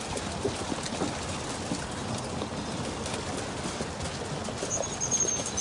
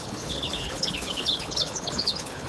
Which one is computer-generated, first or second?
second